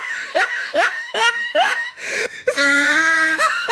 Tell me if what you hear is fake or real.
fake